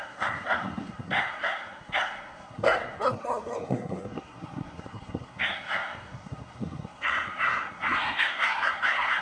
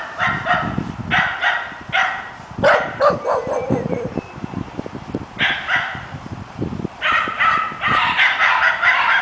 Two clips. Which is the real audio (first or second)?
second